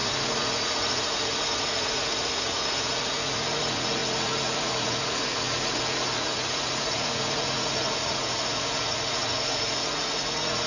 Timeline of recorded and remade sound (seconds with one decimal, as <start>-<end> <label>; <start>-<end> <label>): 0.0-10.7 remade